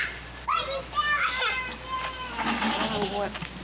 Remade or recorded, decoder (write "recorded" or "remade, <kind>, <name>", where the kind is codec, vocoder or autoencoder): recorded